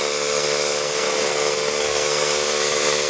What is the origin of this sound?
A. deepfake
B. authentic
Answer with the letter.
A